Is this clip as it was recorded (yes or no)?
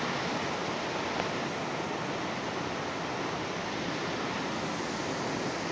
yes